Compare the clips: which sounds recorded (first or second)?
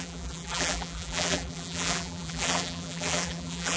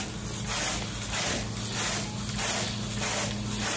second